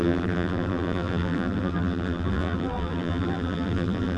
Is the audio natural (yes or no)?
no